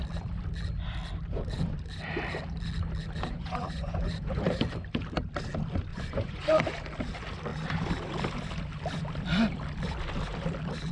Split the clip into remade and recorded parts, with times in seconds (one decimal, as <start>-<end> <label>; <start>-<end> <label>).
0.0-3.3 recorded; 3.3-4.4 remade; 4.4-5.9 recorded; 5.9-6.6 remade; 6.6-10.9 recorded